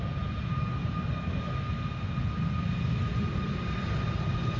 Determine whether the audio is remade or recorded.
recorded